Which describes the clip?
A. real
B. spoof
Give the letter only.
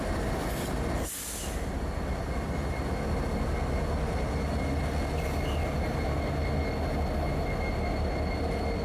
A